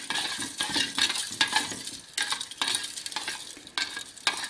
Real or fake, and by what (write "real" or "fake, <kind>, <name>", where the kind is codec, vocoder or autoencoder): real